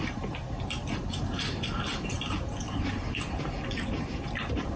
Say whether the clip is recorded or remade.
remade